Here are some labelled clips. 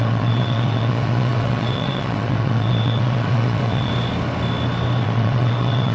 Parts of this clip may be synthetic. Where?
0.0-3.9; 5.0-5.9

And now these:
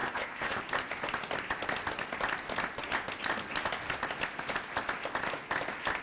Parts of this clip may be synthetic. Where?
0.0-0.6

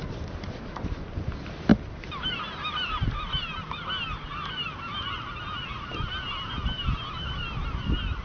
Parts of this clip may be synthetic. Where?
none